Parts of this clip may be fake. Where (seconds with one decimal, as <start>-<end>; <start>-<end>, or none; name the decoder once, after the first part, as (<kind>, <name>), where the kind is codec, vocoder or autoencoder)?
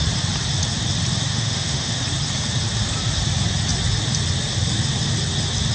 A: 1.3-2.0 (autoencoder, DAC-VAE)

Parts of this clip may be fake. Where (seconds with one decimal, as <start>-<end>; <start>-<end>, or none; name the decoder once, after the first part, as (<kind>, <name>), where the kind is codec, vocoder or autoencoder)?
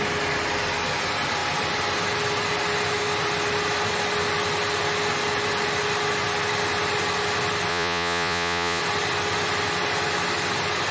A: 7.7-8.8 (vocoder, Vocos)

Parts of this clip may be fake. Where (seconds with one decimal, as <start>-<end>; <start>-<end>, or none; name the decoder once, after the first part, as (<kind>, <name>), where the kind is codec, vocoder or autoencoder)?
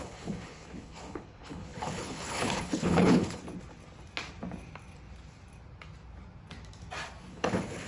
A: 0.0-3.4 (codec, HILCodec); 7.3-7.9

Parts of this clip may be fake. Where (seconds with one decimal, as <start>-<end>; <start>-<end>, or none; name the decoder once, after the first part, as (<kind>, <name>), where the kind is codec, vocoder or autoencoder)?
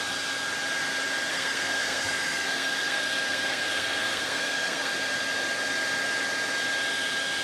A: 1.3-4.9 (codec, SNAC)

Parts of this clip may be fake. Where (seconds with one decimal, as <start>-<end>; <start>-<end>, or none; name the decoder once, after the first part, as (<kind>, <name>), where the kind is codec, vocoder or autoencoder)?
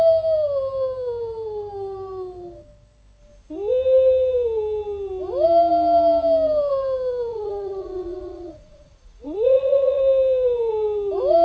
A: 7.3-10.0 (vocoder, Vocos)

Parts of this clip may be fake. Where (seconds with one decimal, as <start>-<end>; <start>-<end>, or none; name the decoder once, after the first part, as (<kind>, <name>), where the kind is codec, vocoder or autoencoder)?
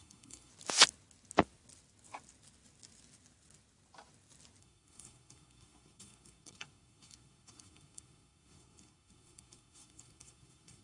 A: 0.0-0.5 (codec, SNAC); 4.6-10.8